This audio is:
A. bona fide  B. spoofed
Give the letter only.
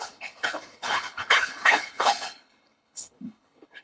B